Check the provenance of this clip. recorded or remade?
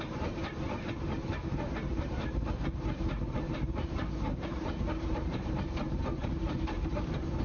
remade